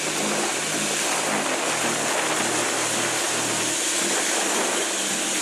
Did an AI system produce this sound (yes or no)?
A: no